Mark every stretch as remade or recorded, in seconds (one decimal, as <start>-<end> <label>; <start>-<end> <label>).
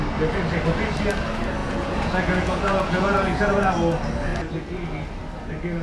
0.0-1.6 recorded; 1.6-3.7 remade; 3.7-5.8 recorded